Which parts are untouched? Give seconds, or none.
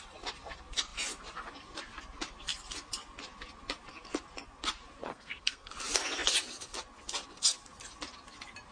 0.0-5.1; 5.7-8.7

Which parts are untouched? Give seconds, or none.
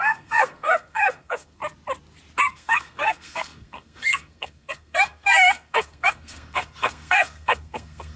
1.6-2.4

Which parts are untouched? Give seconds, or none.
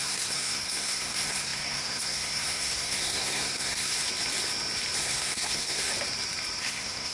4.0-5.0; 5.9-6.6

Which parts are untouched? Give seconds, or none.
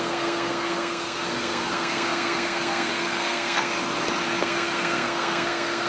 3.7-4.4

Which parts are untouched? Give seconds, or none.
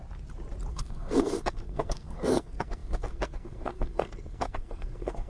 0.0-0.7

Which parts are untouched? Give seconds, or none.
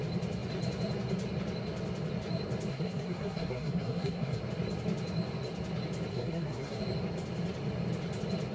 0.0-2.7; 4.4-6.1; 6.8-8.5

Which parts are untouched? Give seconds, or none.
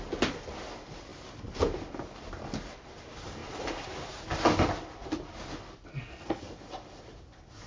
0.0-5.9; 6.4-7.7